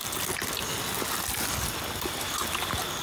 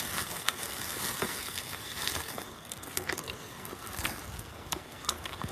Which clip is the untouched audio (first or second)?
first